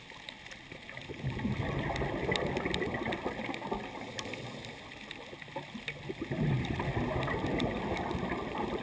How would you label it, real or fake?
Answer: real